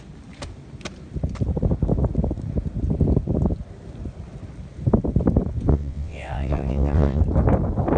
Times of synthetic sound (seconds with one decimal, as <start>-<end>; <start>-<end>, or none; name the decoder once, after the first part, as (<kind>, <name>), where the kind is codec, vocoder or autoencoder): 5.7-7.2 (vocoder, WaveNeXt)